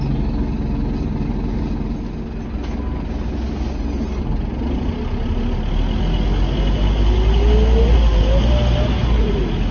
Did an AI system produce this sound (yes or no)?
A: no